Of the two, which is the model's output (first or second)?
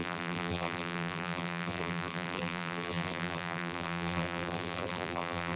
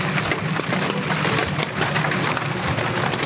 first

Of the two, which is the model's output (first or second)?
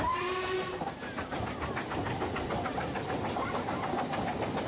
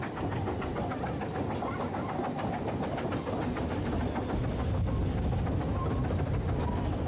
first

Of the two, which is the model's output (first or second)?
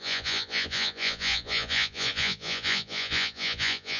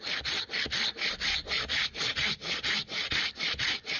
first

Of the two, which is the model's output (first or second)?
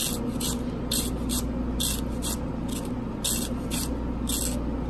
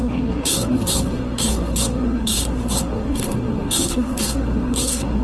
second